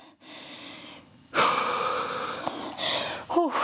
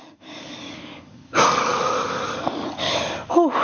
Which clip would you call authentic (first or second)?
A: first